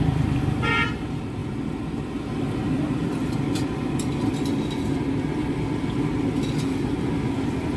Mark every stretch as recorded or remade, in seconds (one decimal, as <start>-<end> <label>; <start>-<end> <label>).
0.0-1.4 recorded; 1.4-4.3 remade; 4.3-7.8 recorded